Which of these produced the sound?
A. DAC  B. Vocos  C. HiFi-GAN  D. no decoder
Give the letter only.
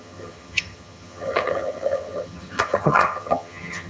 C